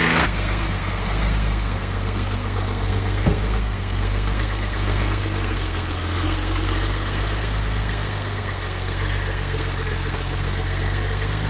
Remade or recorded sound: remade